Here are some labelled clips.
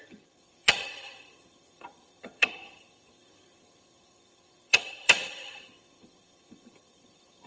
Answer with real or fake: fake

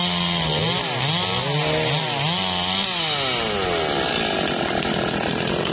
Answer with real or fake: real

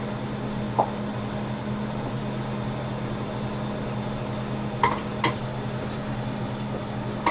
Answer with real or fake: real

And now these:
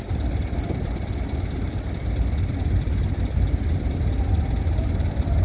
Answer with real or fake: real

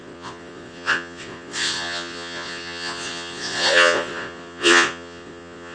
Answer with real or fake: fake